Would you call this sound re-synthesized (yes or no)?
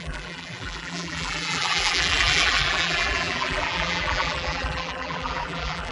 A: yes